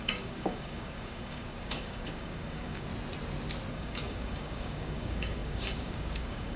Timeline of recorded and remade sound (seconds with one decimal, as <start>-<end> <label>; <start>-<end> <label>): 0.0-2.9 remade; 2.9-3.7 recorded; 3.7-6.6 remade